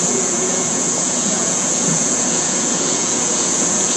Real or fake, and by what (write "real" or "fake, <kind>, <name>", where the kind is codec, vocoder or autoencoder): fake, vocoder, Vocos